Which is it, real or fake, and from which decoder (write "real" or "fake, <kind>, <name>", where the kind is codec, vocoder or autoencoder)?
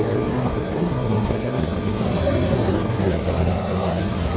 fake, codec, SNAC